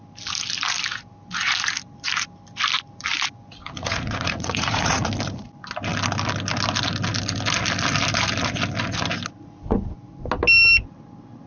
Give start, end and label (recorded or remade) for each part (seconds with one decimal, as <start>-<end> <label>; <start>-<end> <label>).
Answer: 0.0-3.6 recorded; 3.6-5.1 remade; 5.1-11.5 recorded